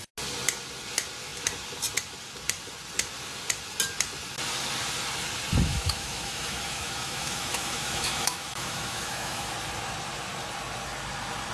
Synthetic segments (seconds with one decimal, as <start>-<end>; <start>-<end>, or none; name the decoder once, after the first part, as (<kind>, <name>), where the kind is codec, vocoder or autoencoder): 5.7-9.5 (autoencoder, DAC-VAE)